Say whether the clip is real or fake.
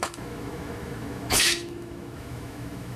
fake